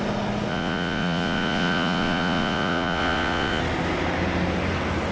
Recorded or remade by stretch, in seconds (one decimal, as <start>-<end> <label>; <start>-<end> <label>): 0.0-0.5 recorded; 0.5-3.6 remade; 3.6-5.1 recorded